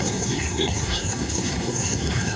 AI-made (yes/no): yes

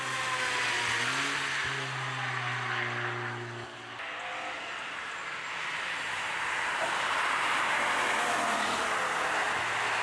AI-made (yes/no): no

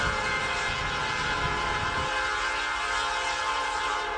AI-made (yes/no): no